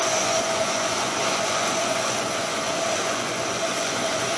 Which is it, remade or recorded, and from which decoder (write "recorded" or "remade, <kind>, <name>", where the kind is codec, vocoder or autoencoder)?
remade, vocoder, Vocos